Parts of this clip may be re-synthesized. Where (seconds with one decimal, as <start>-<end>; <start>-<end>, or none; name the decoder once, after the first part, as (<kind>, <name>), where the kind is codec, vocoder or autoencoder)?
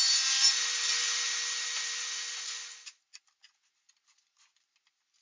none